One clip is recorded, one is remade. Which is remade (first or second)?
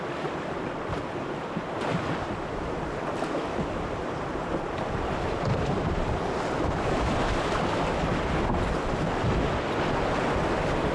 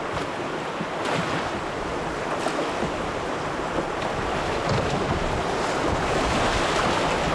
first